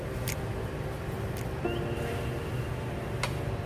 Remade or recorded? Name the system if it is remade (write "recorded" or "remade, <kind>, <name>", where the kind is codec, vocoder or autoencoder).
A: recorded